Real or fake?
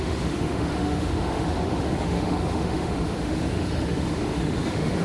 fake